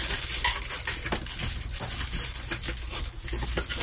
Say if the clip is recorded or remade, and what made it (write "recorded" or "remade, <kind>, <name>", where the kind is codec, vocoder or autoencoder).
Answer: recorded